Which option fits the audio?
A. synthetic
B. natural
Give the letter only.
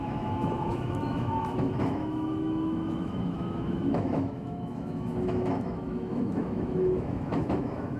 A